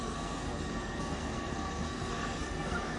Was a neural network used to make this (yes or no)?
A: yes